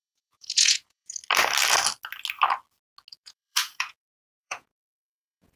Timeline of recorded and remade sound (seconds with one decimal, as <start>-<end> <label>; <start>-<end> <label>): 0.0-1.2 remade; 1.2-3.1 recorded; 3.1-5.6 remade